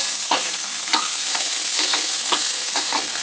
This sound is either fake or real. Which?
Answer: fake